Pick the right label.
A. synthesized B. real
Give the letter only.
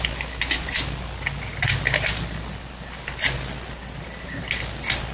B